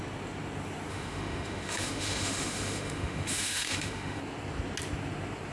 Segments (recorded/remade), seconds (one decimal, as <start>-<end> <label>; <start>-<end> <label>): 0.0-0.9 recorded; 0.9-4.2 remade; 4.2-5.5 recorded